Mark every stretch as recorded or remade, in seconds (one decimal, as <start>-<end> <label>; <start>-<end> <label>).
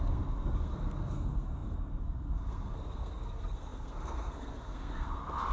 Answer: 0.0-5.5 remade